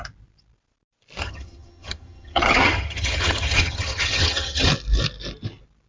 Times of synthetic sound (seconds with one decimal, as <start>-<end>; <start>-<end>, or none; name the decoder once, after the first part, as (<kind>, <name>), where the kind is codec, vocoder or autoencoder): 1.2-4.7 (vocoder, HiFi-GAN)